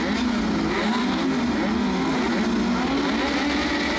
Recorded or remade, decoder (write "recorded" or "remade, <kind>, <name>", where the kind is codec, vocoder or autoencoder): recorded